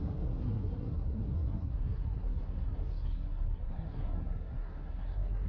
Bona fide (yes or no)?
no